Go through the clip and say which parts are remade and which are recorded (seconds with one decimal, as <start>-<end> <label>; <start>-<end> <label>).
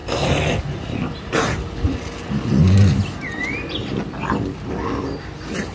0.0-5.7 recorded